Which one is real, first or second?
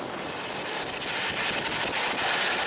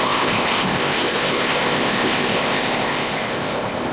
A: first